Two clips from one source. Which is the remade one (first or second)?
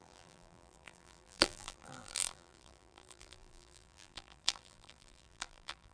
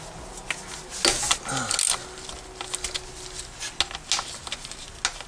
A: first